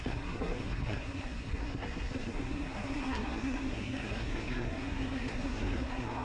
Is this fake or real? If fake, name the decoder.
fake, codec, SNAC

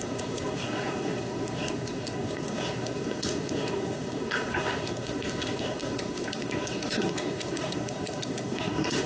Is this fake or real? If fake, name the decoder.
fake, codec, SNAC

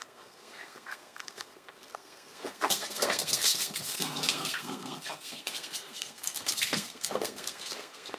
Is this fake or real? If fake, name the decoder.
fake, codec, SNAC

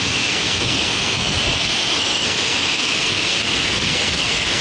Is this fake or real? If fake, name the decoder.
fake, codec, SNAC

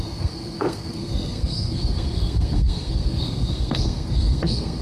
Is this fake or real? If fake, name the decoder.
fake, codec, SNAC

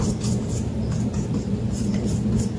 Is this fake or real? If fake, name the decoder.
real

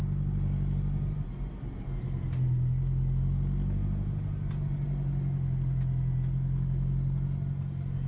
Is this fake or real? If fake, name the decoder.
real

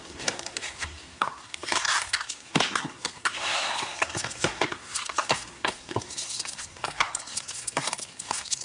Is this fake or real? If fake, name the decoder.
fake, codec, SNAC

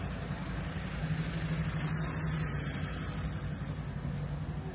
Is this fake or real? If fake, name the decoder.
real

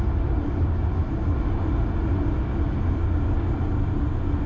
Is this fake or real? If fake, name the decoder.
real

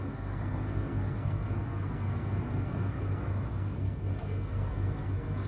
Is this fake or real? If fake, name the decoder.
fake, codec, SNAC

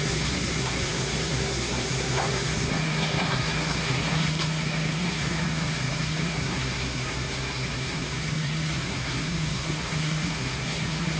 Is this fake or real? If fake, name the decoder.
fake, codec, SNAC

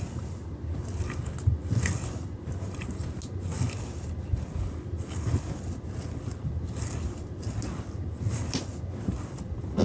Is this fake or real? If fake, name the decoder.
real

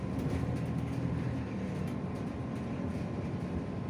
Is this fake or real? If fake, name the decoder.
real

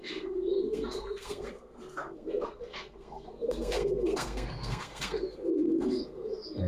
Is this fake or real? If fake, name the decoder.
fake, codec, SNAC